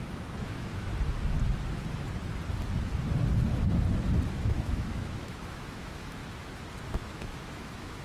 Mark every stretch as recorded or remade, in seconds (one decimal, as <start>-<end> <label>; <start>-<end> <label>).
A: 0.0-0.9 remade; 0.9-4.3 recorded; 4.3-6.2 remade; 6.2-6.9 recorded; 6.9-8.0 remade